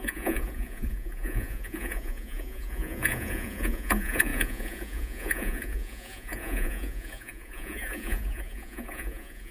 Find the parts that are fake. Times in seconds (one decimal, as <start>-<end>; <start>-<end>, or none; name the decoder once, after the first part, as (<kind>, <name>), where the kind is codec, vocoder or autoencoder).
0.0-9.5 (vocoder, Vocos)